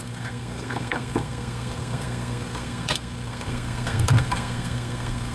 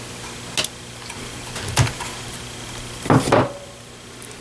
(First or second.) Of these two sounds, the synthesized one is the first